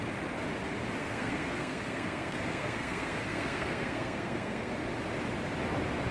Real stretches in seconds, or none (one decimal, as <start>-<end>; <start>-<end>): 0.0-1.0; 4.7-6.1